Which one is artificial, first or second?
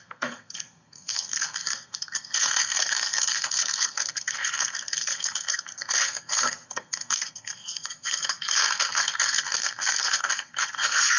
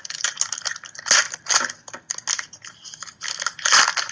first